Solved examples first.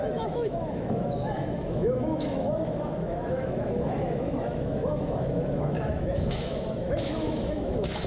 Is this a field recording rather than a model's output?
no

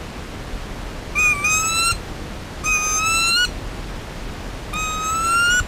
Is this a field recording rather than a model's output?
yes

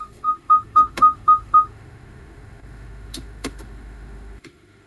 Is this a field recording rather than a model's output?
no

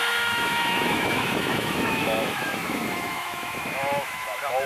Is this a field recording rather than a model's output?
no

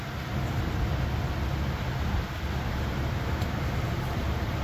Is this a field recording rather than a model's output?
yes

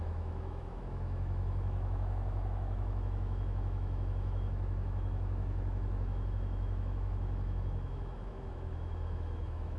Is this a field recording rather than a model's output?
no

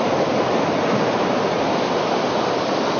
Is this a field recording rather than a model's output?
yes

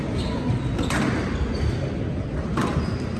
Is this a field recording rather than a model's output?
yes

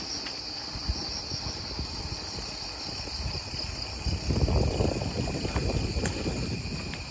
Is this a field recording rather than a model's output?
yes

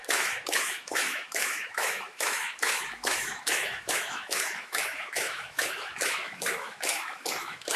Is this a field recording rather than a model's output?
no